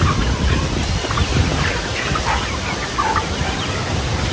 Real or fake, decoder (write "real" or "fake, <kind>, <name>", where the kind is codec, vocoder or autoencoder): real